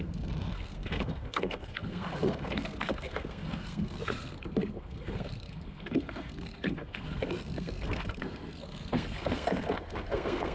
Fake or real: fake